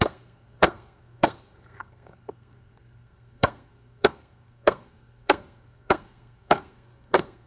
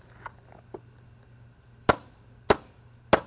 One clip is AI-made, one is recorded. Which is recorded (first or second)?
second